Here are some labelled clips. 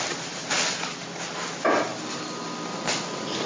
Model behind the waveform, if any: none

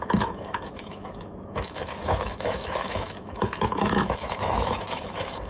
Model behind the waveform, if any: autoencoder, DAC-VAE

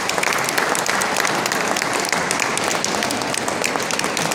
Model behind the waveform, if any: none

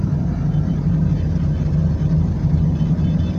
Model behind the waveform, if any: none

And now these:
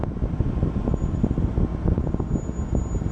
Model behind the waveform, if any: none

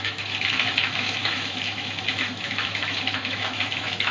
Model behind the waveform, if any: autoencoder, DAC-VAE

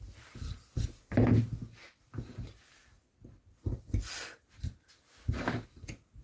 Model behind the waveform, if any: none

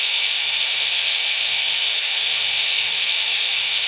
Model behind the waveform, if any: autoencoder, DAC-VAE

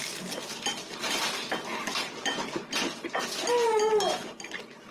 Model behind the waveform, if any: none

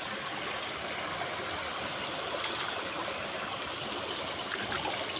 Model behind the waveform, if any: none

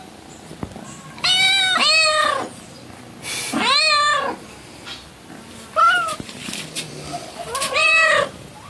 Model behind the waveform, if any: none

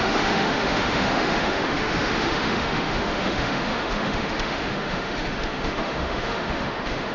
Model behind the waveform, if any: autoencoder, DAC-VAE